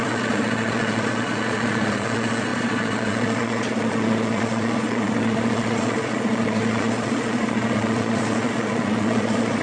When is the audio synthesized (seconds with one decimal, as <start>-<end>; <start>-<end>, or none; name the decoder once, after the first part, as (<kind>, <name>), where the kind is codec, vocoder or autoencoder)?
0.0-9.6 (vocoder, Vocos)